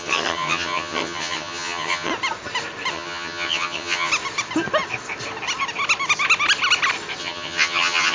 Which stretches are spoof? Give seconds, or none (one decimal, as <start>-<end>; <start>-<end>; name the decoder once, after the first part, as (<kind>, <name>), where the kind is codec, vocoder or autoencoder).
0.0-2.1 (vocoder, HiFi-GAN); 2.9-4.1; 7.2-8.1